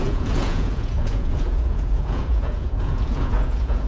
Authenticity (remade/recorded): remade